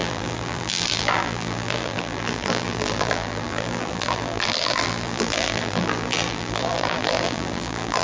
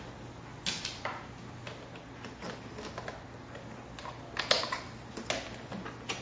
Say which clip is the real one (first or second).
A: second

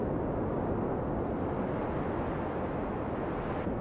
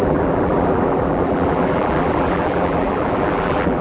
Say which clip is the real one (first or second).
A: first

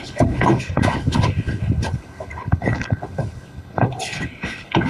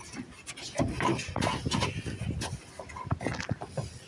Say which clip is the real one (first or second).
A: second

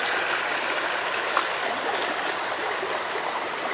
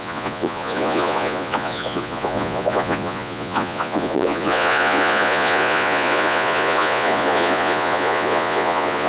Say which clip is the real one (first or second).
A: first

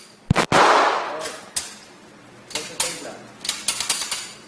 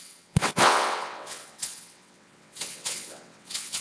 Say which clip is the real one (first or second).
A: first